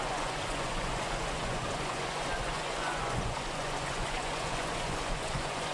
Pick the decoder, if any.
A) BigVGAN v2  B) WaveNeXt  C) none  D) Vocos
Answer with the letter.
D